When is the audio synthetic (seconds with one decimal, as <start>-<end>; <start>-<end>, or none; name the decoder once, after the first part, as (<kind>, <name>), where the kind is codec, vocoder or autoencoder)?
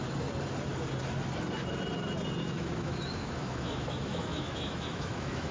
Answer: 2.4-5.5 (autoencoder, DAC-VAE)